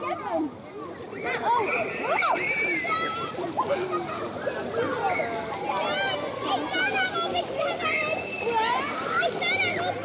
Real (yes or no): yes